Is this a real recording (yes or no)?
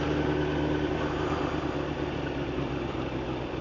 yes